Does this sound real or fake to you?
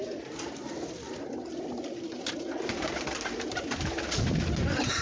real